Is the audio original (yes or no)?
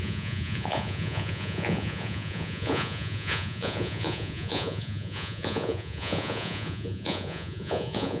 no